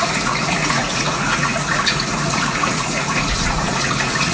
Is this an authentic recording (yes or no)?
no